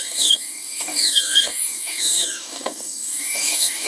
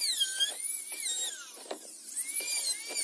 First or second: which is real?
second